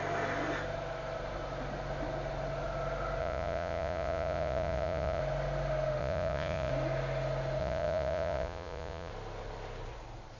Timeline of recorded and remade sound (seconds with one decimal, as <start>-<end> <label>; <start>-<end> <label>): 0.0-3.2 recorded; 3.2-5.2 remade; 5.2-6.0 recorded; 6.0-6.7 remade; 6.7-7.6 recorded; 7.6-9.1 remade; 9.1-10.4 recorded